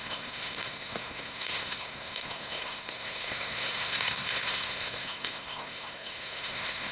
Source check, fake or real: fake